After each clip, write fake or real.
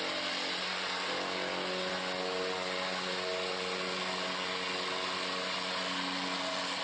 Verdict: real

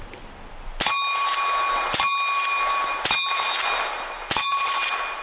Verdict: real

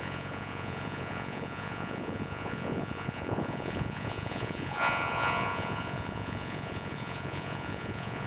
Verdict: fake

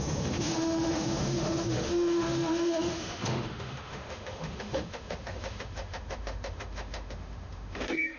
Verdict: fake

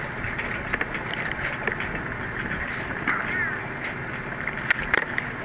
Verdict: real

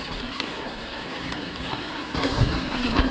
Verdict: fake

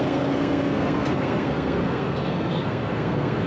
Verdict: fake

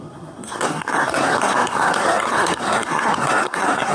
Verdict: fake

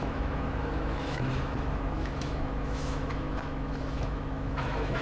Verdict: fake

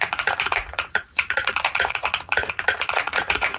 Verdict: fake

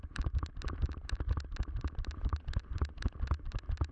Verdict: real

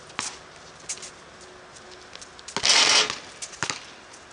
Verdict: real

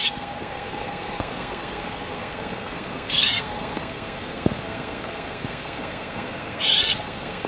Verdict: fake